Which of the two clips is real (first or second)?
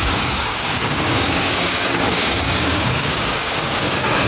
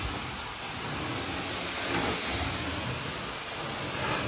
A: second